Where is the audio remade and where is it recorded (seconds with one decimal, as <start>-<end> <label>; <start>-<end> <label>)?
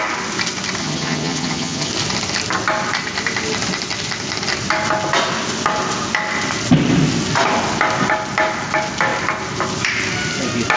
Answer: 0.0-0.8 recorded; 0.8-1.9 remade; 1.9-10.8 recorded